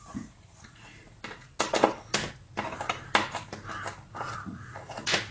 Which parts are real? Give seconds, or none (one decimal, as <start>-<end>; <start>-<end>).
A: 1.0-4.2